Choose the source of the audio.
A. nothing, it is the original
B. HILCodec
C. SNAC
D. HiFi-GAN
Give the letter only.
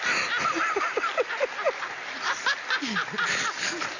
A